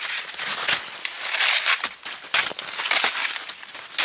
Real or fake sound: real